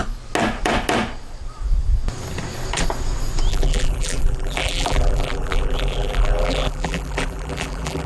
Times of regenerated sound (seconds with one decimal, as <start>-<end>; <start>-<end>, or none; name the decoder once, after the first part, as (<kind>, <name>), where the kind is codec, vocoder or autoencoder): 3.5-8.1 (vocoder, BigVGAN v2)